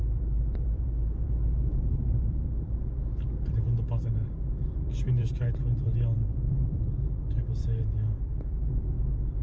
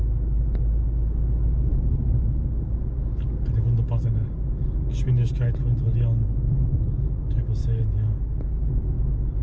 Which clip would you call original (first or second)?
second